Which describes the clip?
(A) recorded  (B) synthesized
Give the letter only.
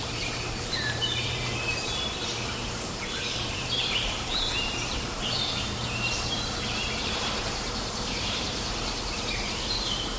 B